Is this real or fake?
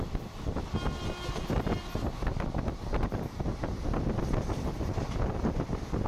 real